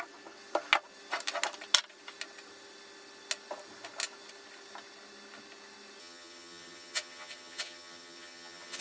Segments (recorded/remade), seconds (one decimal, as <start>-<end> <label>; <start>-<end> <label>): 0.0-6.0 recorded; 6.0-8.8 remade